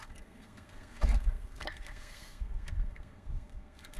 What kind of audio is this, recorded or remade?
remade